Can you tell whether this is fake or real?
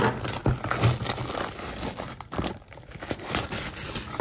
real